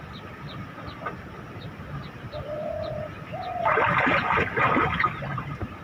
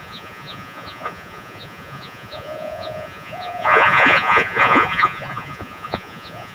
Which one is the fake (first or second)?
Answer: second